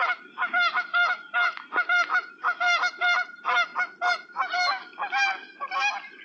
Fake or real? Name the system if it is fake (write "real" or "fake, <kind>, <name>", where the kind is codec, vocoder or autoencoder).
real